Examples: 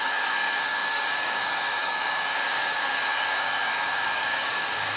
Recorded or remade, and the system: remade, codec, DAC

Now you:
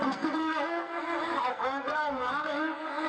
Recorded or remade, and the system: remade, codec, SNAC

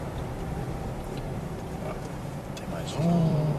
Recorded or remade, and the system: remade, vocoder, BigVGAN v2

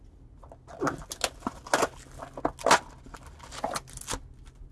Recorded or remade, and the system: recorded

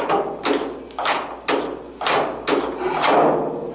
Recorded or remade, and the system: recorded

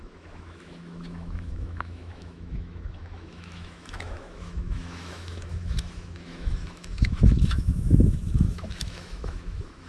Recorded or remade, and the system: remade, autoencoder, DAC-VAE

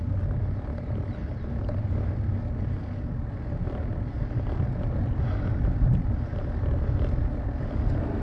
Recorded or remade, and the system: recorded